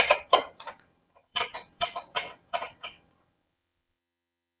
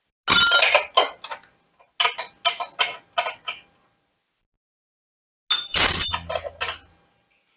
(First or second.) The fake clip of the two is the first